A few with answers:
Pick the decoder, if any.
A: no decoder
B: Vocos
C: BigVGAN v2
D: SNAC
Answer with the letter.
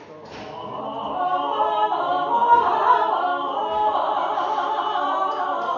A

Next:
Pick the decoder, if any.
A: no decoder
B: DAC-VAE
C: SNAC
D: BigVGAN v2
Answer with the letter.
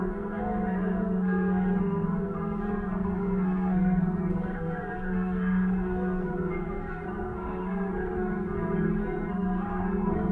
C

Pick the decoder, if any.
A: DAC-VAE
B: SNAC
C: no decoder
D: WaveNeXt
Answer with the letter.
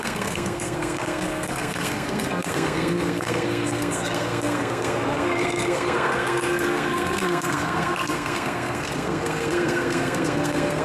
B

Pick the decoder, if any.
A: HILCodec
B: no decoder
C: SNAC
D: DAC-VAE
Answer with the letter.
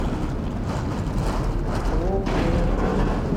B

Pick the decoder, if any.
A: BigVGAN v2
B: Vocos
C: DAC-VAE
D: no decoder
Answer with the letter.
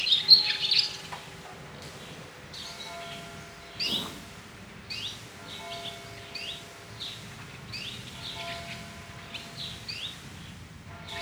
D